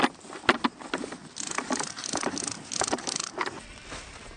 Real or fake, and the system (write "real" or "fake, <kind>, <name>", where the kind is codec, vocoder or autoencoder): real